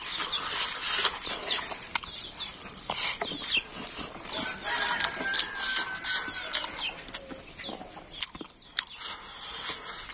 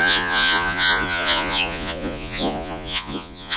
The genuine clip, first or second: first